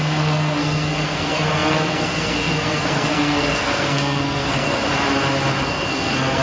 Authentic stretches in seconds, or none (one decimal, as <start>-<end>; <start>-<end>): 4.8-5.6